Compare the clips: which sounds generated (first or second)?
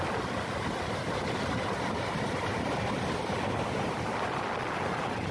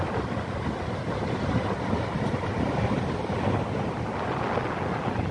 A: first